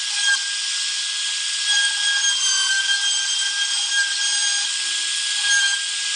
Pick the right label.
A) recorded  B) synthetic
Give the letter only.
A